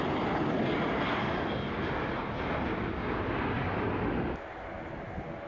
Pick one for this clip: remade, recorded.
recorded